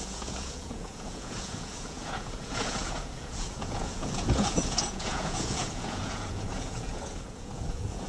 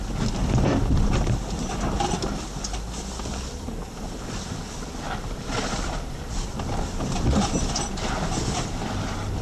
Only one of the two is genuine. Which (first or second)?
second